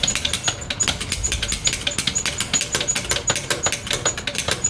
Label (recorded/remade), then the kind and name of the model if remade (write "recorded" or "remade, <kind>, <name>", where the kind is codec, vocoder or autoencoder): recorded